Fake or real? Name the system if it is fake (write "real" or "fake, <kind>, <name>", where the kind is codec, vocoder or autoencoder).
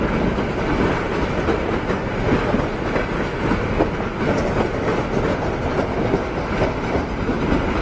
real